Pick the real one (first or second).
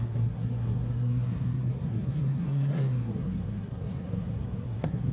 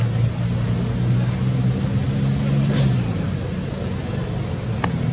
second